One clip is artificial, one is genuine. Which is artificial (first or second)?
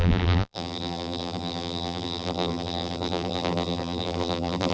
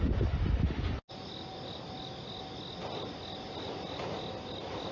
first